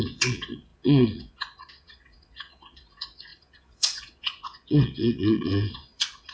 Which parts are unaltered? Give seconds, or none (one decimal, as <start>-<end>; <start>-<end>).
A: none